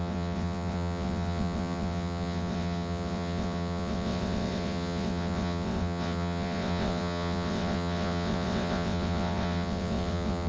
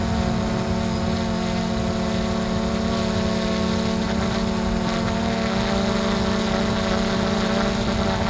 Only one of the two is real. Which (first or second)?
second